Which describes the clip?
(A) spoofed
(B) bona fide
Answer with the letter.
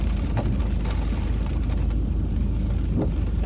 B